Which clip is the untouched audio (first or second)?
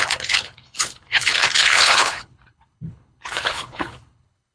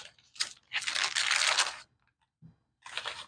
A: second